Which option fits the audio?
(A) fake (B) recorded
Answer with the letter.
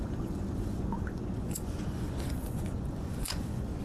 A